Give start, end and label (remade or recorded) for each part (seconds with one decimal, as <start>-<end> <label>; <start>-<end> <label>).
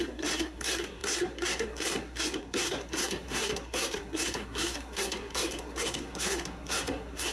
0.0-7.3 remade